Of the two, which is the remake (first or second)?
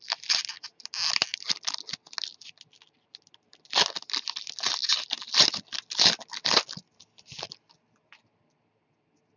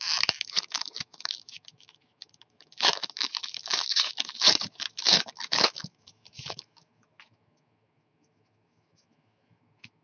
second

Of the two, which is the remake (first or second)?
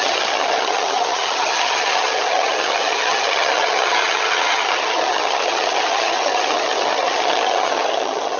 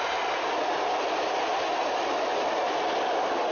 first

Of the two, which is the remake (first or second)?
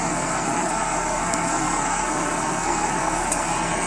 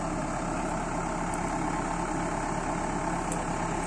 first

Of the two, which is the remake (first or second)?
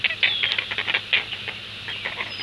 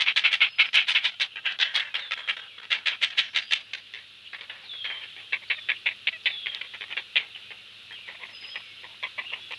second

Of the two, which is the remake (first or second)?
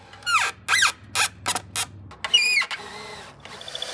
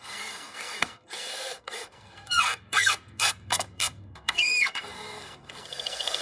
second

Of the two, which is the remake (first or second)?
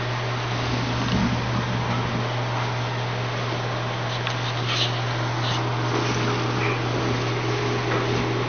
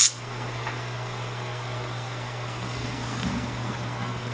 second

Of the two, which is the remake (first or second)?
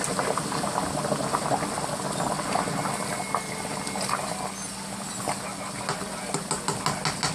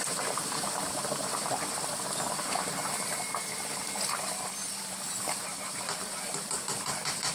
second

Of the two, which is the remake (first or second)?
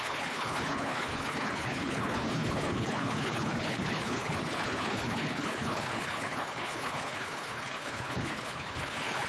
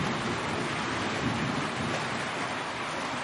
first